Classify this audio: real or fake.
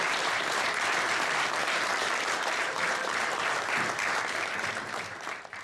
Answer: fake